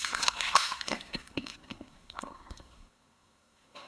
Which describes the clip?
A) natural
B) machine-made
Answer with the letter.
B